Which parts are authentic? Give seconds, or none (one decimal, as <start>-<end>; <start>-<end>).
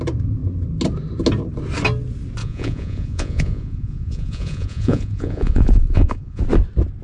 0.0-2.4; 6.4-7.0